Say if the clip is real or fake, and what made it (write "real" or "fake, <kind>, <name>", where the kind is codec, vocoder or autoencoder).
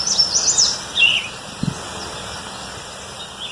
real